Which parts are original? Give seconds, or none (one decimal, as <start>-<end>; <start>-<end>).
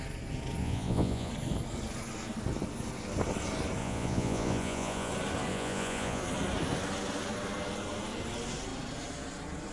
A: 0.0-0.6; 1.3-3.8; 5.1-5.5; 6.2-9.7